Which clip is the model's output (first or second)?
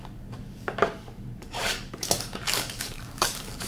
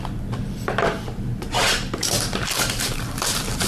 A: first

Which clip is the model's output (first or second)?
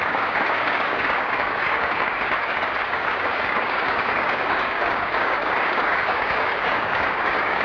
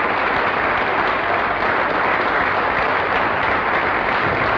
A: first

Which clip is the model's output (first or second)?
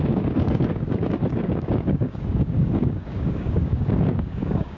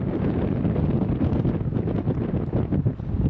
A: first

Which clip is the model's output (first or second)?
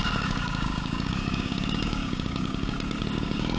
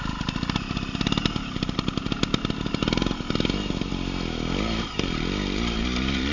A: first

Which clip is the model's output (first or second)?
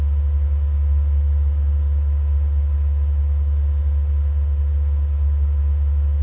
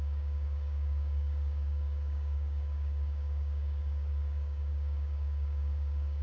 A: second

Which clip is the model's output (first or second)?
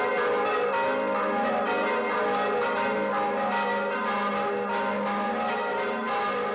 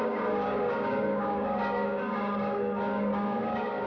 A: second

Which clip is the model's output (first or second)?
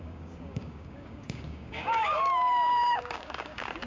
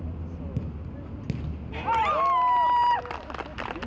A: first